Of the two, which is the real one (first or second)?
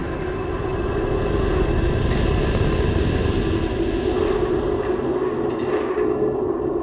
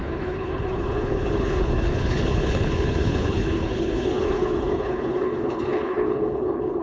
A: first